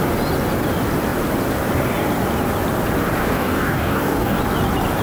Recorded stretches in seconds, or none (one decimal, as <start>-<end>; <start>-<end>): 0.0-3.2; 4.4-5.0